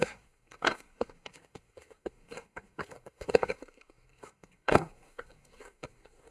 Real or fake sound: fake